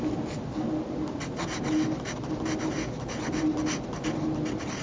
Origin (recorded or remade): recorded